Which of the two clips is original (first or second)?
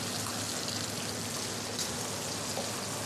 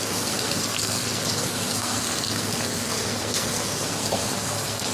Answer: first